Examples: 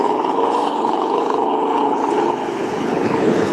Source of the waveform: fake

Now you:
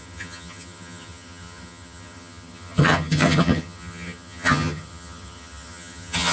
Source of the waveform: fake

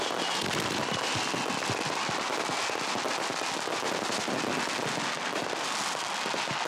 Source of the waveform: real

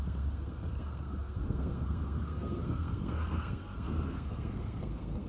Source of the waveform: fake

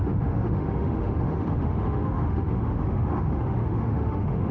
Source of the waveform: fake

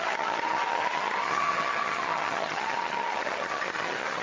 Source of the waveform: fake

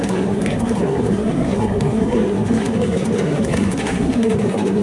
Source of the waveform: fake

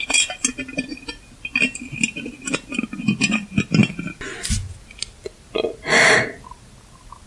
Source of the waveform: real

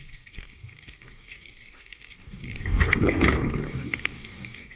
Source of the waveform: fake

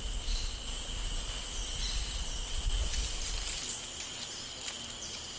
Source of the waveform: real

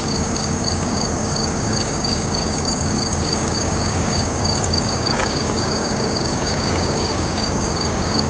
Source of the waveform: fake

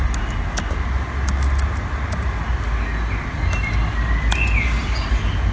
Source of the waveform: real